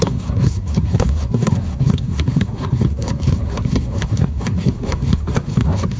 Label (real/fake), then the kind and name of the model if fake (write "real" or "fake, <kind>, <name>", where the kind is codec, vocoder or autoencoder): fake, codec, SNAC